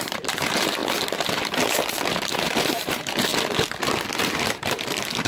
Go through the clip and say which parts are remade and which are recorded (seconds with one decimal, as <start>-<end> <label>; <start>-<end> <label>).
0.0-0.8 remade; 0.8-2.1 recorded; 2.1-3.3 remade; 3.3-4.2 recorded; 4.2-5.3 remade